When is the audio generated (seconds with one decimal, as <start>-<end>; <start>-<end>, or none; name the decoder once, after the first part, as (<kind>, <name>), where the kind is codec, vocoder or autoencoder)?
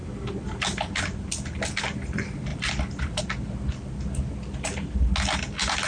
2.5-3.2 (vocoder, BigVGAN v2)